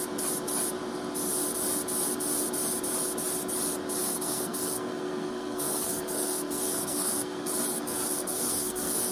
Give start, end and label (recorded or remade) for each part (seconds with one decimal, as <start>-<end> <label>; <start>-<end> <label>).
0.0-4.0 recorded; 4.0-9.1 remade